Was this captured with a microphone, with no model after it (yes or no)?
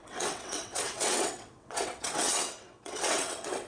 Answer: no